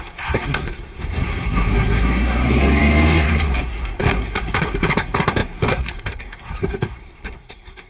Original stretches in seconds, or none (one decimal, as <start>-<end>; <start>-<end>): none